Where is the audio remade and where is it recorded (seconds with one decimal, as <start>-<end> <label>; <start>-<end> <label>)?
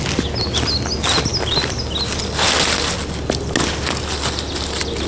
0.0-5.1 recorded